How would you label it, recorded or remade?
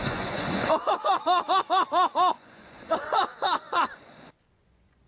remade